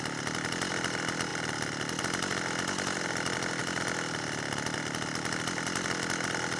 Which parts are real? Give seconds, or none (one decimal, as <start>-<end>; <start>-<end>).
0.0-6.6